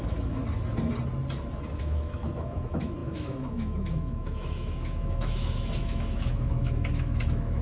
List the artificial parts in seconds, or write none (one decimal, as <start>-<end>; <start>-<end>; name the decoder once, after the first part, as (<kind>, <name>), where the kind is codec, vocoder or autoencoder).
0.0-0.4 (autoencoder, DAC-VAE); 1.8-7.6

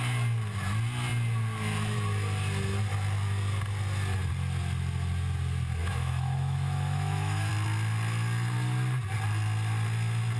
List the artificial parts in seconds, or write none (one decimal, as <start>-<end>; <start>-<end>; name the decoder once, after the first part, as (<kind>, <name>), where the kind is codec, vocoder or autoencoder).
5.8-7.5 (autoencoder, DAC-VAE)

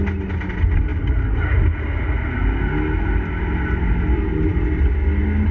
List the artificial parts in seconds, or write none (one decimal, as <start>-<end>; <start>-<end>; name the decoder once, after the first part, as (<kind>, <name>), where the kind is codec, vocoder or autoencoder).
none

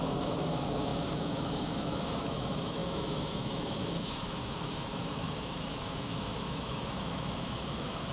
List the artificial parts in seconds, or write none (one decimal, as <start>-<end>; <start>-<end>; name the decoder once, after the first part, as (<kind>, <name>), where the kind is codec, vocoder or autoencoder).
0.0-8.1 (autoencoder, DAC-VAE)

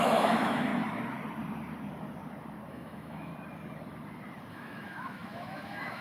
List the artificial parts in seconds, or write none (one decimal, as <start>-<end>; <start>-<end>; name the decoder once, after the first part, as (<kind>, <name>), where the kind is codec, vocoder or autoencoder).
0.0-0.7 (autoencoder, DAC-VAE); 2.7-3.3; 4.5-6.0

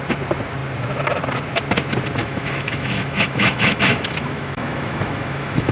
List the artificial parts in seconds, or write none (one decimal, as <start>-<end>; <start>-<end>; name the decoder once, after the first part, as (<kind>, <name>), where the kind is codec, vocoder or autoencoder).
2.2-5.7 (autoencoder, DAC-VAE)